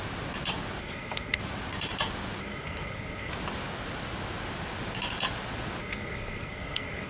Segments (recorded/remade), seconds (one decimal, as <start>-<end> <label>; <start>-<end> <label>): 0.0-0.8 recorded; 0.8-1.4 remade; 1.4-2.4 recorded; 2.4-3.3 remade; 3.3-5.8 recorded; 5.8-7.1 remade